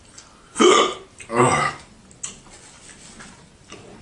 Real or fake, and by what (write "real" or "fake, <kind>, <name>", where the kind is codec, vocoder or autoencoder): real